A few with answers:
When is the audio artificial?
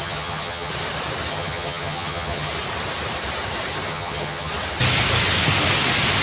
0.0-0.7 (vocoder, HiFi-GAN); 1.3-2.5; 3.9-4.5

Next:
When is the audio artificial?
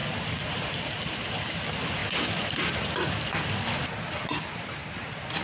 none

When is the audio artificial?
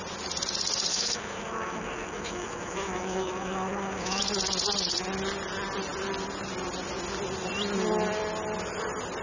0.9-4.2 (autoencoder, DAC-VAE)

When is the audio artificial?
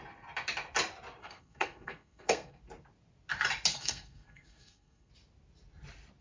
1.2-2.6 (codec, SNAC); 3.7-5.1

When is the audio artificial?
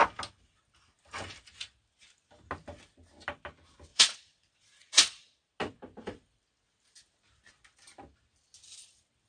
3.9-5.5 (vocoder, Vocos)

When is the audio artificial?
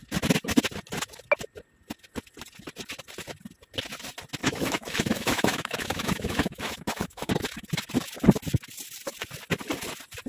4.4-7.3 (autoencoder, DAC-VAE)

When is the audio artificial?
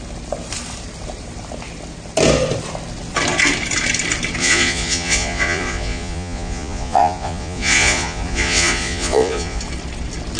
4.4-9.6 (vocoder, Vocos)